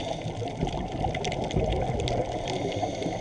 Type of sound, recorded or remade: recorded